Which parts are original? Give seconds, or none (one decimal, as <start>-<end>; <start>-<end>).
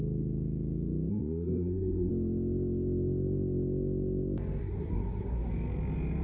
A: 0.0-1.1; 2.1-4.6; 5.5-6.2